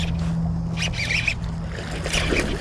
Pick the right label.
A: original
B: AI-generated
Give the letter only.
A